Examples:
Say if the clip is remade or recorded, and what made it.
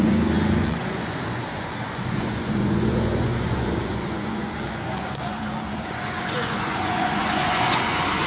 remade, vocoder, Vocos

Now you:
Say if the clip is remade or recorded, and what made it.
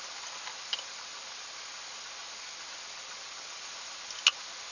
recorded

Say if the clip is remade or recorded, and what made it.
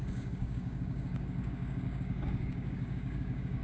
remade, codec, DAC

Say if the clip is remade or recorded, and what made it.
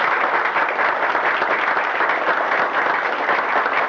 recorded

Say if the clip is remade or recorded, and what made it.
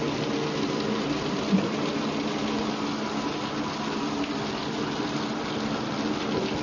recorded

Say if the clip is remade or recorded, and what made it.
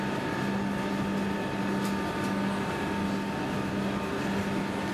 recorded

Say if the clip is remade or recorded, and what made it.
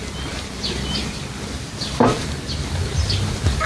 recorded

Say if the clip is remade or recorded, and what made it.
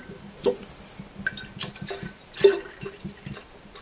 recorded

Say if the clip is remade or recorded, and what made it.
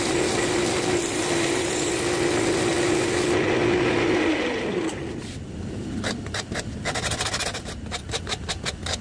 recorded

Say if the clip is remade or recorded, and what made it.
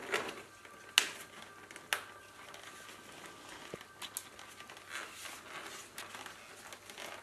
recorded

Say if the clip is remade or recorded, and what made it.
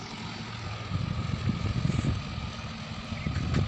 recorded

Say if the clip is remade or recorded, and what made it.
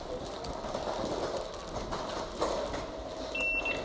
recorded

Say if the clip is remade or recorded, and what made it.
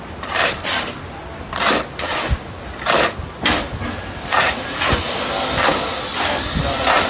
recorded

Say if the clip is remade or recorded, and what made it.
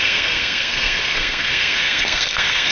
remade, codec, SNAC